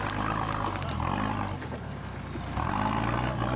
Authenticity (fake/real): real